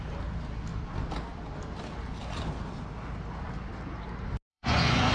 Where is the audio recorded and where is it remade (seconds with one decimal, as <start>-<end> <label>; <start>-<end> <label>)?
0.0-4.5 recorded; 4.5-5.1 remade